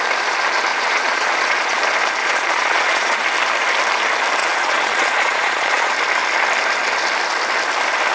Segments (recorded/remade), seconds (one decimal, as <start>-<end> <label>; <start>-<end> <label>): 0.0-0.7 recorded; 0.7-1.8 remade; 1.8-2.2 recorded; 2.2-3.2 remade; 3.2-4.4 recorded; 4.4-5.9 remade; 5.9-8.1 recorded